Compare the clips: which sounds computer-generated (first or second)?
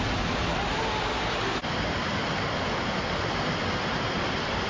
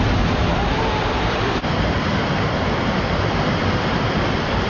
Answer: second